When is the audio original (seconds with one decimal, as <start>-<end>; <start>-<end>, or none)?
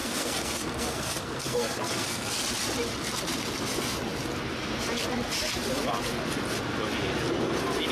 2.4-7.9